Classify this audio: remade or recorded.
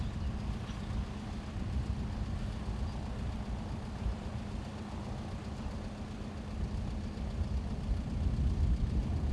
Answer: recorded